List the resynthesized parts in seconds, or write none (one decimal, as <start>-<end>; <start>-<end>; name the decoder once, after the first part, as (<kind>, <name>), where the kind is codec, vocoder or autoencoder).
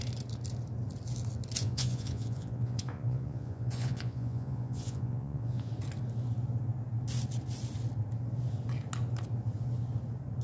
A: 1.6-5.7 (vocoder, Vocos)